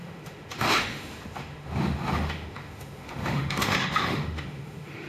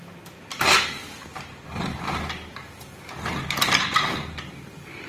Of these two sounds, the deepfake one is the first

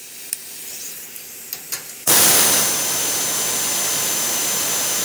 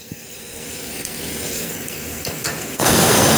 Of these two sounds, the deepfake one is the second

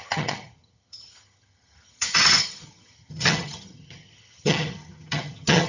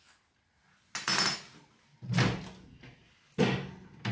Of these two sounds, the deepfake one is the first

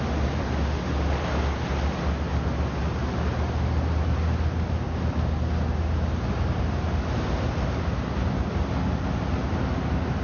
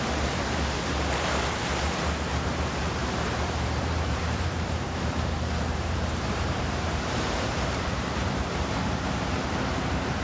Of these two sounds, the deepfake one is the second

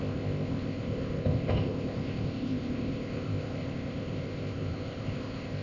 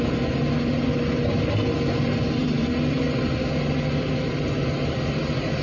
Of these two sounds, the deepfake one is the first